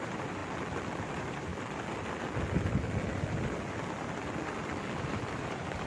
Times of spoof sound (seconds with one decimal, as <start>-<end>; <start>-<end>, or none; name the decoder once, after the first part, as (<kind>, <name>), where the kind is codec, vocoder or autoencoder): 0.0-0.4 (vocoder, BigVGAN v2); 1.0-1.5; 5.0-5.9